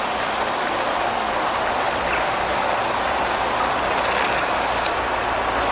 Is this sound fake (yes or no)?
no